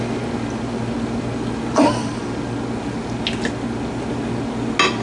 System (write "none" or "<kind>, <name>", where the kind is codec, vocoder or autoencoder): none